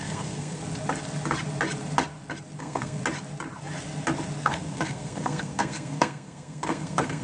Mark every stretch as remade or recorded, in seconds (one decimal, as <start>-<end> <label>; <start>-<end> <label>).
0.0-0.6 remade; 0.6-2.6 recorded; 2.6-3.0 remade; 3.0-4.4 recorded; 4.4-7.2 remade